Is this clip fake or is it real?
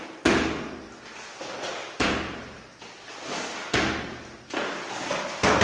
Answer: real